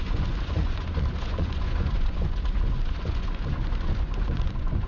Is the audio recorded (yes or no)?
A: no